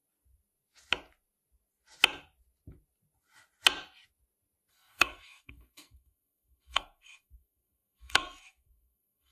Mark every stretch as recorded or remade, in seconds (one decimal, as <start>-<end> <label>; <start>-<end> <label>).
0.0-4.7 recorded; 4.7-9.3 remade